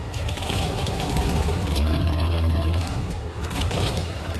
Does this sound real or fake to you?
fake